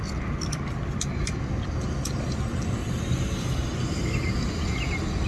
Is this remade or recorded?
recorded